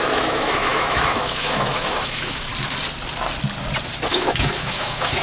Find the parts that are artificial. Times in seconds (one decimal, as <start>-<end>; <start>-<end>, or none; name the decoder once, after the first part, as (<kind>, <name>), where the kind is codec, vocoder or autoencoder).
0.0-2.5 (autoencoder, DAC-VAE); 4.1-5.2